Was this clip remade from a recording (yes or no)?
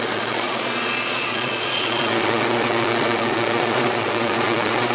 yes